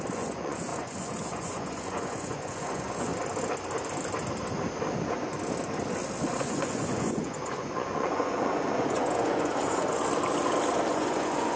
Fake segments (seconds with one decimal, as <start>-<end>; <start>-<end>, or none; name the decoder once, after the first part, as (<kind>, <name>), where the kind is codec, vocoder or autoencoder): 0.0-3.1 (vocoder, Vocos); 6.4-10.0; 10.9-11.6

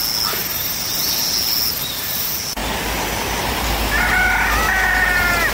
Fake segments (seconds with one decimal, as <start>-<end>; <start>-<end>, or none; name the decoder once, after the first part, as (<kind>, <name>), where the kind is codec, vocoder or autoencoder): none

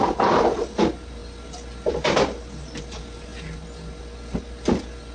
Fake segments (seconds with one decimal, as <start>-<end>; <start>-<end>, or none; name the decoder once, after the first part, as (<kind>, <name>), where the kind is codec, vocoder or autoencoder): none

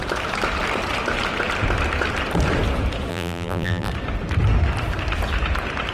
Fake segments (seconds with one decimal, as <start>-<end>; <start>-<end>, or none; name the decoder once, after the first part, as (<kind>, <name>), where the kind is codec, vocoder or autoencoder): 3.1-3.9 (vocoder, BigVGAN v2)

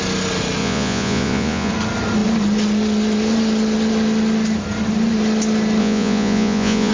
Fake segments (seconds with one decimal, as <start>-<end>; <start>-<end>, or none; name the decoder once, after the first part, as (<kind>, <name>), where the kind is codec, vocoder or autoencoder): 0.6-1.7 (vocoder, Vocos); 5.8-6.9

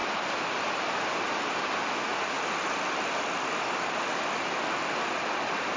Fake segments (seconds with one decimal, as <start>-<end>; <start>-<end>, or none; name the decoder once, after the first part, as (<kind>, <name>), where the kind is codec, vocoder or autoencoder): none